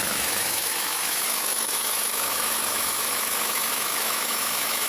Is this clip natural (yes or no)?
no